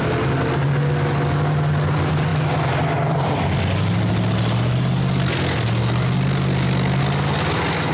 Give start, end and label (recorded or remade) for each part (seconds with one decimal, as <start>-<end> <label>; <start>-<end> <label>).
0.0-7.9 recorded